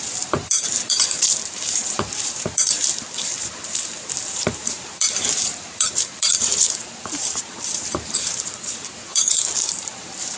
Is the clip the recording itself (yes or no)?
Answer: no